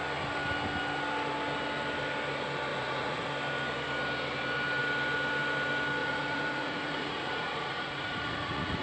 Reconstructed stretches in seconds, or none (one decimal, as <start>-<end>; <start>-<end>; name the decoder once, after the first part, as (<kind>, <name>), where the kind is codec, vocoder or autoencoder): 2.7-3.3 (vocoder, Vocos); 6.0-8.8